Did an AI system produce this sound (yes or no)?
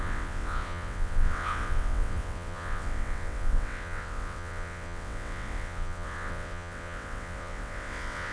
yes